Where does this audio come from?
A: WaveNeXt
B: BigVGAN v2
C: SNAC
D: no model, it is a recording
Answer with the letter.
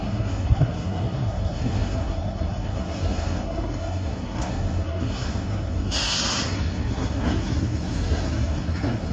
C